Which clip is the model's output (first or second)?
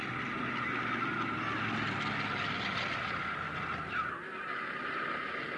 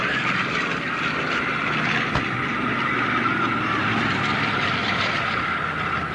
second